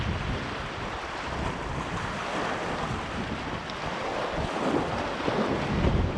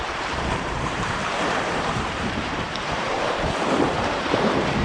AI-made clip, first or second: second